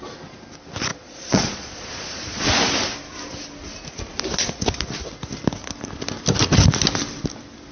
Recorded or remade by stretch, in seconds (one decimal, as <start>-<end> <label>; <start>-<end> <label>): 0.0-0.9 recorded; 0.9-2.4 remade; 2.4-7.7 recorded